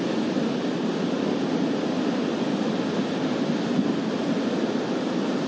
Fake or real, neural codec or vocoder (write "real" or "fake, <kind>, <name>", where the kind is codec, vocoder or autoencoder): real